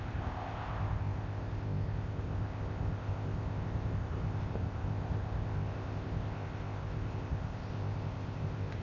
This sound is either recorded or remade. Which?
remade